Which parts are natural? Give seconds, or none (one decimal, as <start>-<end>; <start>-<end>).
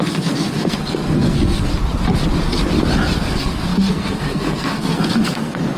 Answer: 1.7-3.2